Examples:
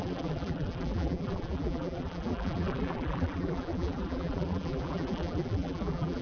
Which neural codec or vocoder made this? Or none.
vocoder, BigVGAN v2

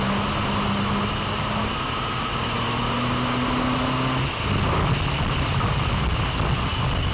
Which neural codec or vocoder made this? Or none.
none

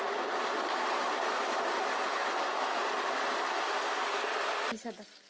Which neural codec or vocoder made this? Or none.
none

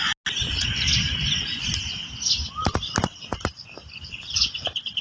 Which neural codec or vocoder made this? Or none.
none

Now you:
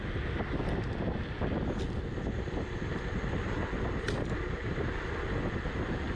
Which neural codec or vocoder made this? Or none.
none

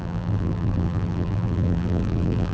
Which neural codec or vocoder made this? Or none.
vocoder, BigVGAN v2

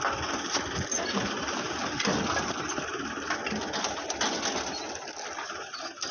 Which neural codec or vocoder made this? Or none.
none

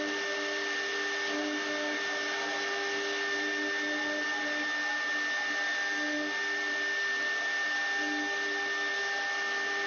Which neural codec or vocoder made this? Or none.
none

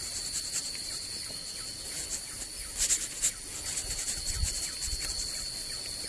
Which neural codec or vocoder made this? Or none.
none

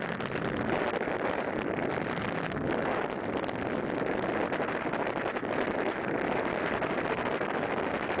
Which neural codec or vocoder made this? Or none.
none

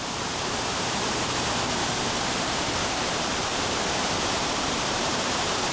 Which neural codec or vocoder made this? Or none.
vocoder, BigVGAN v2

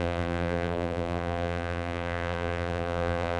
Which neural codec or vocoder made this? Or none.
vocoder, BigVGAN v2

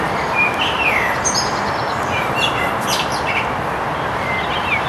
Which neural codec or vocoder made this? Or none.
vocoder, BigVGAN v2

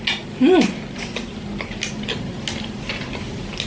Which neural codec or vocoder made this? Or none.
none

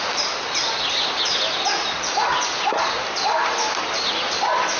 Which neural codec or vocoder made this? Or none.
none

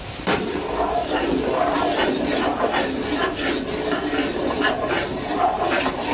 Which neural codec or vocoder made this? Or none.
vocoder, BigVGAN v2